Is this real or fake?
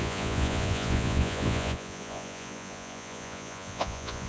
fake